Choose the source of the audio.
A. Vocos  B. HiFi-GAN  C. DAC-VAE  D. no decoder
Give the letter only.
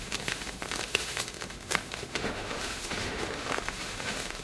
C